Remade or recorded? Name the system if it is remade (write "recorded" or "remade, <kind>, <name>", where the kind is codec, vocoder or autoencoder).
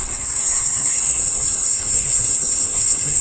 remade, codec, SNAC